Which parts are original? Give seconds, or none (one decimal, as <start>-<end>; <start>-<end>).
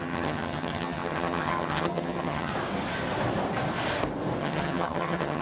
2.5-4.4